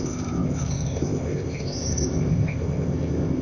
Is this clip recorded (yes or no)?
no